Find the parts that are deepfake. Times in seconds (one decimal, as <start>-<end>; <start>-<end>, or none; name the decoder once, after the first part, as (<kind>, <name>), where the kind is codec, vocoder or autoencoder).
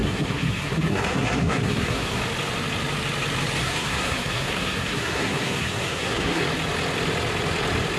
0.0-2.2 (codec, SNAC); 3.6-6.4